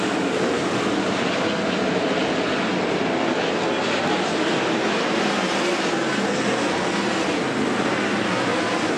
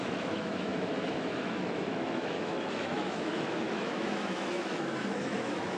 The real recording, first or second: first